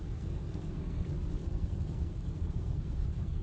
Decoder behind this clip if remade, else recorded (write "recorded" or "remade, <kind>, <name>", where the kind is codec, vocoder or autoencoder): remade, codec, SNAC